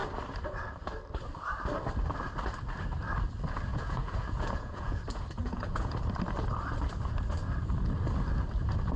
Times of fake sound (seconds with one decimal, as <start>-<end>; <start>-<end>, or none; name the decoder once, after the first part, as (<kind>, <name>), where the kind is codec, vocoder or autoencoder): 3.7-5.0 (vocoder, Vocos); 5.4-5.9